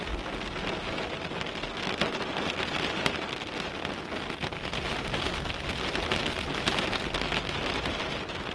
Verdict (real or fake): real